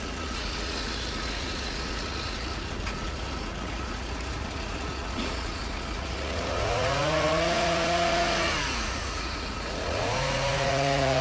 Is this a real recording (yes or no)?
no